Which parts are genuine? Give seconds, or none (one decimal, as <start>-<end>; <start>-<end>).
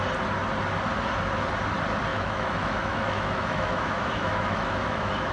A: 0.0-2.1